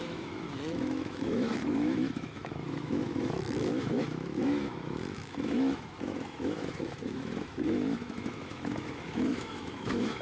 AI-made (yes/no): yes